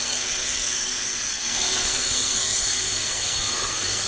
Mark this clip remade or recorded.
remade